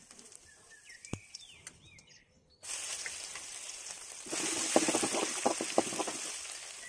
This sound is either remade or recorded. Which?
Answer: recorded